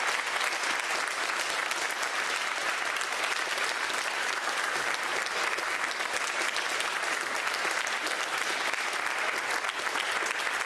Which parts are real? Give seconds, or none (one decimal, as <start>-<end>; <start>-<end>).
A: 0.0-2.6; 4.8-10.7